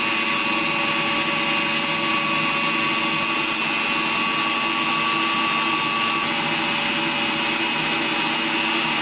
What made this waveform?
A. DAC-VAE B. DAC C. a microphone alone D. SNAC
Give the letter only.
C